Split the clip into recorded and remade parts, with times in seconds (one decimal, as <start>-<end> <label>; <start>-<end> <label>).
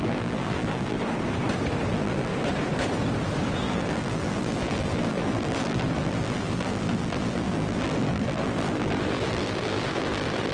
0.0-1.0 remade; 1.0-1.9 recorded; 1.9-2.3 remade; 2.3-3.6 recorded; 3.6-10.5 remade